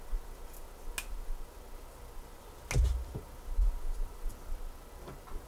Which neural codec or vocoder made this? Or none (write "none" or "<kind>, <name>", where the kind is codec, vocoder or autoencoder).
none